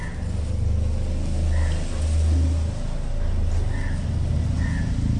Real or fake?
real